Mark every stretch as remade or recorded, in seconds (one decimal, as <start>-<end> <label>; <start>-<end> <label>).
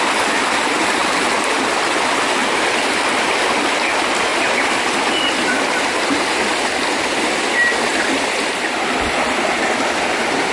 0.0-2.4 recorded; 2.4-3.1 remade; 3.1-4.3 recorded; 4.3-7.3 remade; 7.3-7.9 recorded; 7.9-10.5 remade